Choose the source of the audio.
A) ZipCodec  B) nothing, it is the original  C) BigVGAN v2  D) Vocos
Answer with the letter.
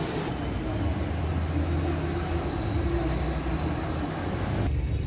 B